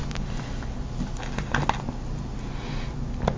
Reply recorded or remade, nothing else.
recorded